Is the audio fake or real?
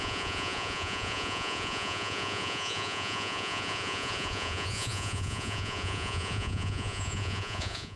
fake